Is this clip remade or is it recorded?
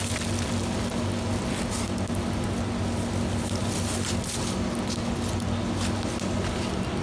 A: recorded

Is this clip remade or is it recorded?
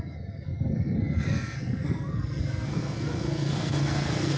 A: remade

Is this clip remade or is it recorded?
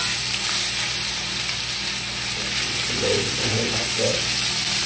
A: recorded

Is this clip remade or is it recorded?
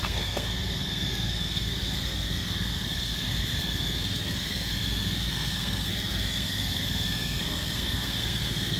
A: remade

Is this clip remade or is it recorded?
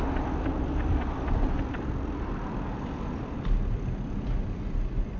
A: recorded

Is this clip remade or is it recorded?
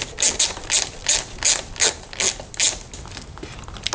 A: recorded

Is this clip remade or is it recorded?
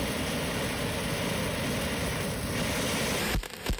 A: recorded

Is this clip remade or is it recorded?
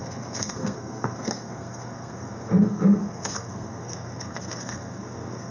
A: remade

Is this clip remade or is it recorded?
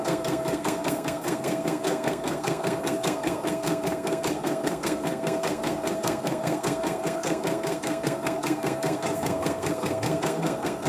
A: remade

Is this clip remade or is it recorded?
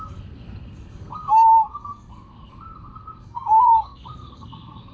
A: remade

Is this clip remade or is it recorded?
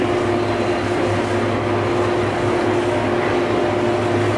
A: recorded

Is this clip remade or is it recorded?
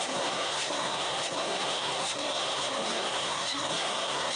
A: remade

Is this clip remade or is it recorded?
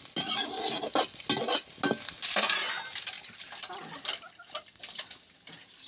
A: recorded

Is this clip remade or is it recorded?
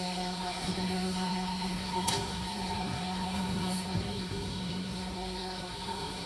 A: remade